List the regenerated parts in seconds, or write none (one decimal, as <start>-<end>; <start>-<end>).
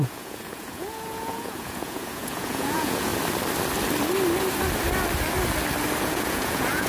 0.0-3.1; 6.0-6.9